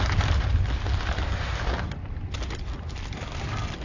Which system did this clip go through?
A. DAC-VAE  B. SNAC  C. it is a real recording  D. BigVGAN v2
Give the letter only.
C